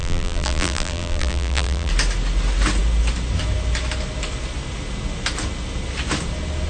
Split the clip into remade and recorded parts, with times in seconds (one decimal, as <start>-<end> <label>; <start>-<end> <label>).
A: 0.0-1.9 remade; 1.9-6.7 recorded